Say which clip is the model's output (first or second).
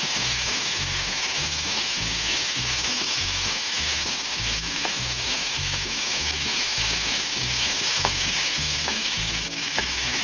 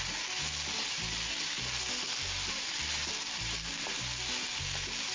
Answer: first